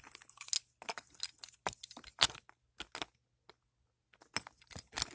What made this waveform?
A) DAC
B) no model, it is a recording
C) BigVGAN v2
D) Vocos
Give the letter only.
B